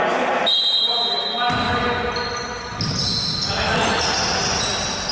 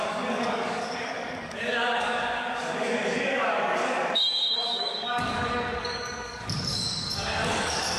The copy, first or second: second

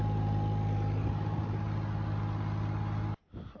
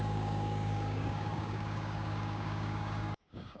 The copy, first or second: second